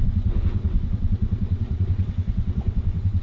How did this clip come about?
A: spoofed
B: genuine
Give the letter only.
A